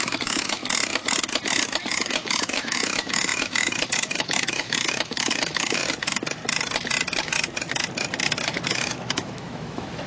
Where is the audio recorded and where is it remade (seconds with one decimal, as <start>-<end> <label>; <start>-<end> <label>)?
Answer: 0.0-0.6 remade; 0.6-1.9 recorded; 1.9-5.8 remade; 5.8-8.7 recorded; 8.7-10.1 remade